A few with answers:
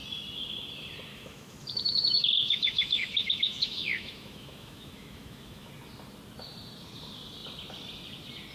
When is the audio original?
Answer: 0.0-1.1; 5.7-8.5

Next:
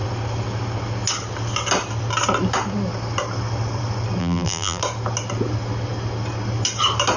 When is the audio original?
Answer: 0.0-4.2; 4.8-7.2

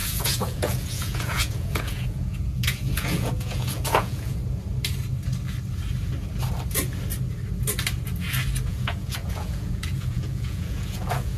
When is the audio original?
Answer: 4.4-8.7

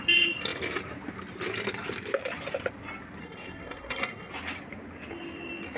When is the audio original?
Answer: 0.0-3.2; 4.3-5.8

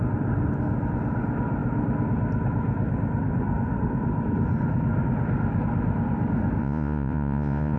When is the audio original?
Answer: 0.0-6.6

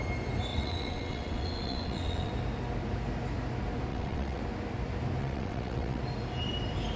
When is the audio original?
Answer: 0.0-0.5; 2.3-3.9; 4.4-5.2; 6.0-7.0

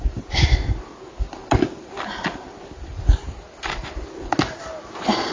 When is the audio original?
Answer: 0.0-5.3

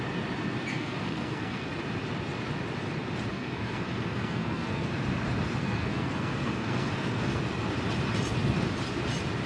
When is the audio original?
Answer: 0.0-0.7; 1.7-3.3; 4.9-5.6; 7.4-9.5